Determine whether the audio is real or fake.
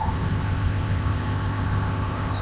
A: fake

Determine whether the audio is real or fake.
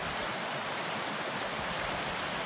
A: real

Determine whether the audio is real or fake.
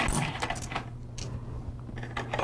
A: real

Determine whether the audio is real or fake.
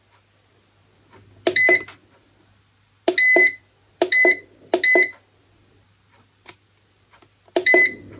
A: real